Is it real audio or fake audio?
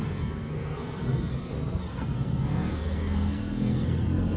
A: fake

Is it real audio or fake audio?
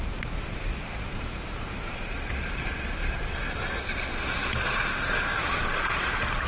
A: real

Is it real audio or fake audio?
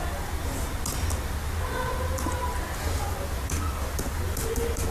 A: real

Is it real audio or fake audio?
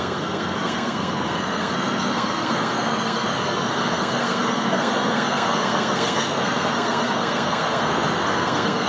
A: fake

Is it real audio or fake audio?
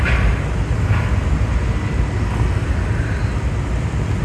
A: real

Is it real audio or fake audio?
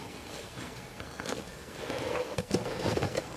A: fake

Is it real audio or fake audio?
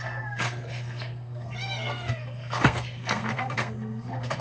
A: fake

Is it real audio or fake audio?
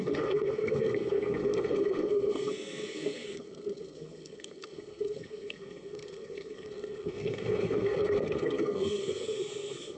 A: fake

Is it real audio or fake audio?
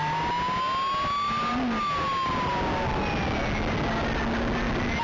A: real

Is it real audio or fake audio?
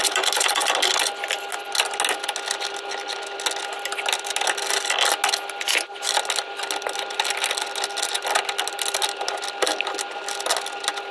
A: real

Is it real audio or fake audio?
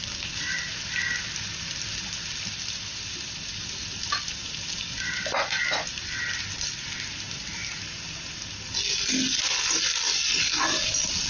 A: real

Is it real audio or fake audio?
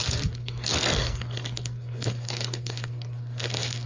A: fake